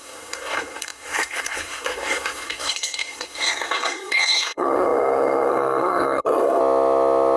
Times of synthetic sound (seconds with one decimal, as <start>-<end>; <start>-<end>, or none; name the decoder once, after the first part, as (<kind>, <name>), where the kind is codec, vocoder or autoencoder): 0.0-6.6 (codec, SNAC)